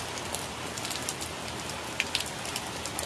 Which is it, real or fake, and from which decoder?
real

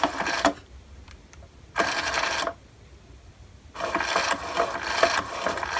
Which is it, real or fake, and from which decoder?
fake, vocoder, BigVGAN v2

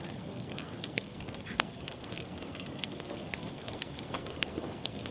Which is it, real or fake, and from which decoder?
fake, codec, SNAC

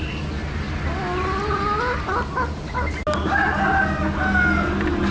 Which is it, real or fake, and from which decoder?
real